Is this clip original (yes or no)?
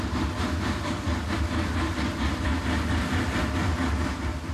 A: yes